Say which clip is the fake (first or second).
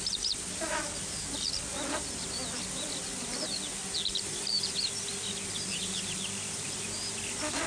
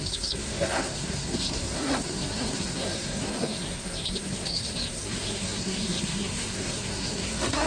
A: second